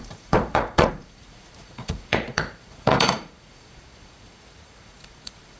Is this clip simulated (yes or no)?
yes